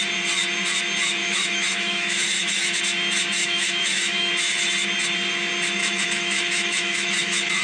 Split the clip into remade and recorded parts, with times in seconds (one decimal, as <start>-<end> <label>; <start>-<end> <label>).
0.0-1.2 recorded; 1.2-2.8 remade; 2.8-3.4 recorded; 3.4-4.3 remade; 4.3-5.8 recorded; 5.8-7.6 remade